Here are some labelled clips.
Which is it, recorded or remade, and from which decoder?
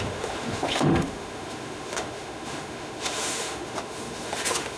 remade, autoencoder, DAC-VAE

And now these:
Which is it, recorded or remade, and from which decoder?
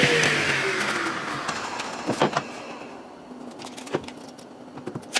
recorded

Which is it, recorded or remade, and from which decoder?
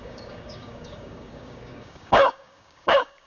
remade, codec, DAC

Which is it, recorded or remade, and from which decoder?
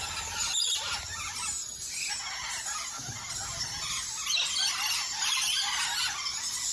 recorded